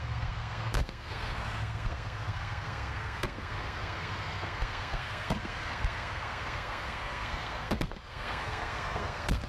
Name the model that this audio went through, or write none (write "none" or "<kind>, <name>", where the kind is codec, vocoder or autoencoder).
codec, SNAC